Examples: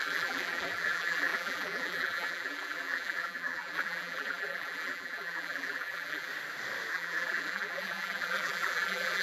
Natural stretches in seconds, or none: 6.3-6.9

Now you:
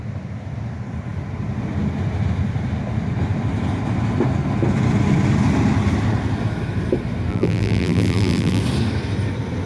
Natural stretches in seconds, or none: 0.0-7.3; 8.6-9.7

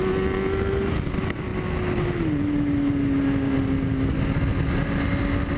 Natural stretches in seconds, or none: 0.0-5.6

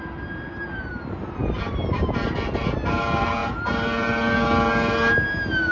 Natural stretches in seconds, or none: 0.0-1.4; 2.3-5.7

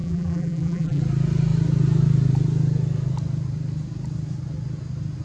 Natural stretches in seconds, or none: 1.0-5.2

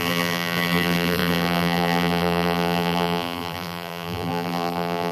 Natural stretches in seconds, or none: none